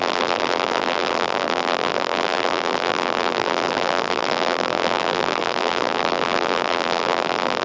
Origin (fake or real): fake